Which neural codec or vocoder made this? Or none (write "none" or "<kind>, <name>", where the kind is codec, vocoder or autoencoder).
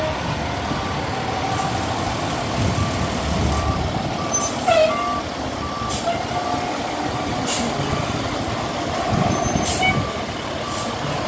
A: none